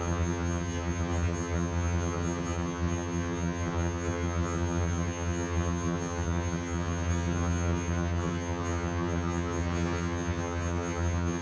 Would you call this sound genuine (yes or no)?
no